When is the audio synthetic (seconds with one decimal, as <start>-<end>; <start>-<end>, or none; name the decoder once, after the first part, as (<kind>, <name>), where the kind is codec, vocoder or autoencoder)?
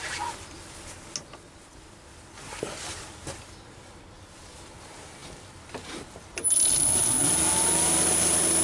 none